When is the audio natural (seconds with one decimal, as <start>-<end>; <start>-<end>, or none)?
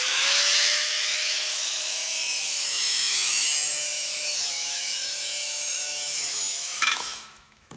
none